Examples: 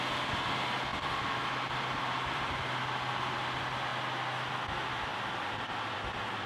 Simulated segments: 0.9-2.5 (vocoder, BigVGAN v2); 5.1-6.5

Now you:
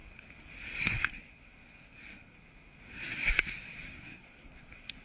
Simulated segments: 0.0-5.0 (codec, SNAC)

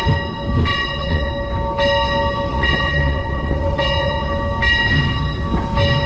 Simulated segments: 0.7-1.3 (vocoder, WaveNeXt); 2.5-4.3